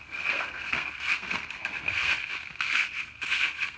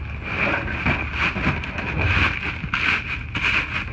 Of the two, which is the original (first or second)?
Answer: second